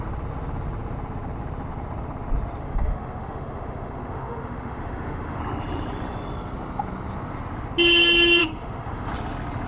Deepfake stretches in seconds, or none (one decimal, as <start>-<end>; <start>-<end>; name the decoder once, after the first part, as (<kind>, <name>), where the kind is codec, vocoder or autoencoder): 2.6-5.4 (autoencoder, DAC-VAE); 8.4-9.1